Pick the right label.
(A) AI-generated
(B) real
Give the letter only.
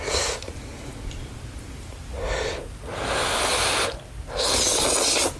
B